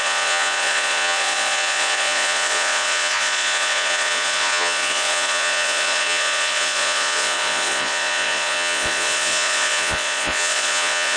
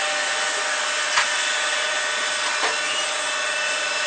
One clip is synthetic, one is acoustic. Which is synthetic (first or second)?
first